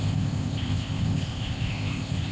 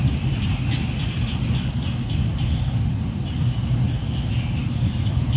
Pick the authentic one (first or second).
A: second